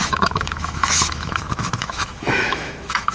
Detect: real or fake fake